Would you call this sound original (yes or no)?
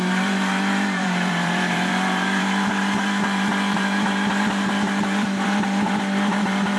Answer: no